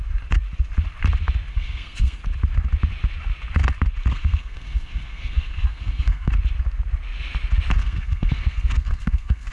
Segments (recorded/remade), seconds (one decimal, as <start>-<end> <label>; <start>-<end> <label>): 0.0-1.5 recorded; 1.5-2.2 remade; 2.2-4.1 recorded; 4.1-6.3 remade; 6.3-7.8 recorded; 7.8-9.5 remade